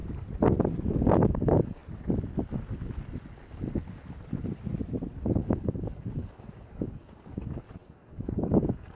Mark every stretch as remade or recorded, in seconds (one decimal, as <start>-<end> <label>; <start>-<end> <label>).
0.0-0.8 recorded; 0.8-1.8 remade; 1.8-5.4 recorded; 5.4-8.9 remade